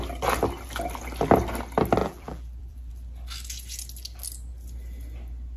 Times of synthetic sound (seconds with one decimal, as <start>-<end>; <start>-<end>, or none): 2.0-2.9

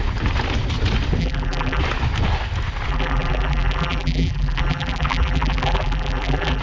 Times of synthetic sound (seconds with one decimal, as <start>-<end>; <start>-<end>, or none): 1.2-1.8; 2.9-6.6

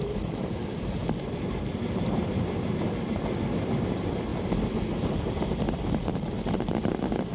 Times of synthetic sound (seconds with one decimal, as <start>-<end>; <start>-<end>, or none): 0.0-4.3; 6.3-7.3

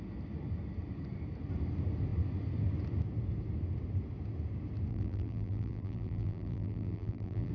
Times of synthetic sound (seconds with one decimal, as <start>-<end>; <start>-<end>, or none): 4.9-7.5

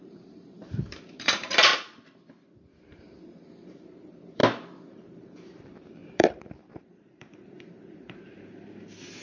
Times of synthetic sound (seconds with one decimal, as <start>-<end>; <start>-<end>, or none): 0.0-1.7; 3.0-4.4; 4.9-9.2

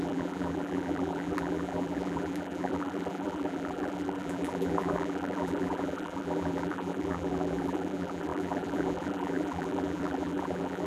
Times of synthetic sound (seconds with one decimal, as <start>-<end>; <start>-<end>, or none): 0.0-10.9